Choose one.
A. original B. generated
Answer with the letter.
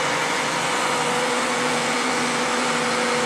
B